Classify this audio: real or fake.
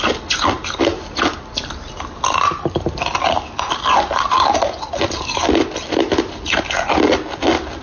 real